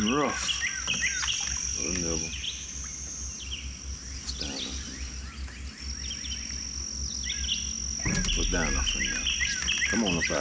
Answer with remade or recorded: recorded